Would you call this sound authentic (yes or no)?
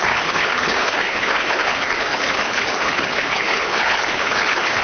no